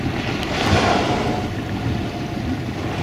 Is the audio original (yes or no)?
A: yes